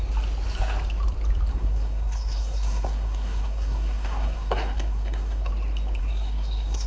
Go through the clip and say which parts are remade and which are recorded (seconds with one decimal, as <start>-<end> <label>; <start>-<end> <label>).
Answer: 0.0-1.5 recorded; 1.5-5.5 remade; 5.5-6.0 recorded; 6.0-6.9 remade